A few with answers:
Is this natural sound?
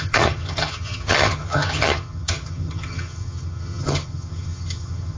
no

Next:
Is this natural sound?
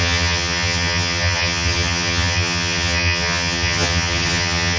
no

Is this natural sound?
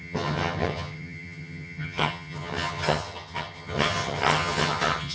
no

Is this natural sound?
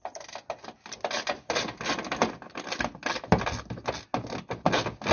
yes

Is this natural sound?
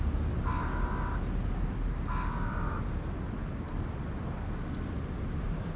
yes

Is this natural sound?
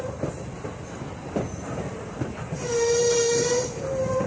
yes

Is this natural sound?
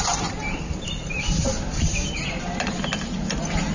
yes